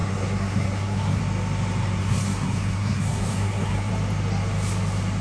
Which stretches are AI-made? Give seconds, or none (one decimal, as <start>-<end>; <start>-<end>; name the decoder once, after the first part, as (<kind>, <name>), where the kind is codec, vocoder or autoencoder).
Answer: 0.0-1.2 (codec, SNAC); 2.0-3.9